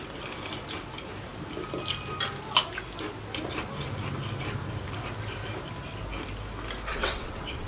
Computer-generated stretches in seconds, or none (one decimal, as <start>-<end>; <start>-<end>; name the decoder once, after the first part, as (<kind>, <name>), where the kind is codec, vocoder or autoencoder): 6.9-7.7 (vocoder, WaveNeXt)